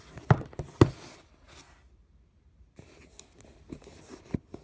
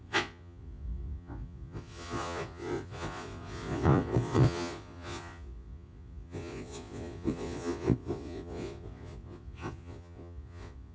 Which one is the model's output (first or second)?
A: second